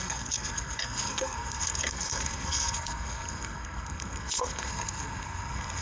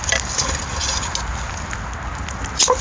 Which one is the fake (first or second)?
first